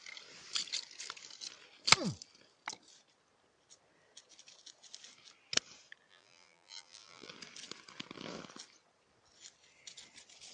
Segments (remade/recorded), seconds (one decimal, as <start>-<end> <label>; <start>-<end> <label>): 0.0-6.1 recorded; 6.1-7.3 remade; 7.3-10.5 recorded